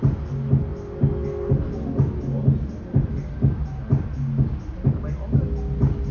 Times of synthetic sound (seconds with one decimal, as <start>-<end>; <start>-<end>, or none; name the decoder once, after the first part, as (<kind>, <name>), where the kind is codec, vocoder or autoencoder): none